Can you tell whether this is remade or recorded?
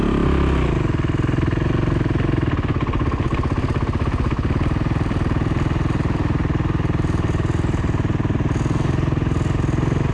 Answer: recorded